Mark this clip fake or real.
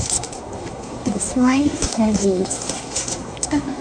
fake